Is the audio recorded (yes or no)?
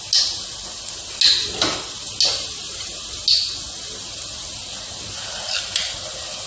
yes